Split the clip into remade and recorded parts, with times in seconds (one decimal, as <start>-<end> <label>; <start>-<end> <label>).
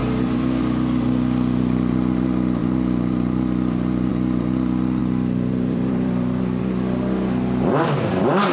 0.0-0.6 remade; 0.6-2.6 recorded; 2.6-4.1 remade; 4.1-5.0 recorded; 5.0-6.6 remade; 6.6-8.5 recorded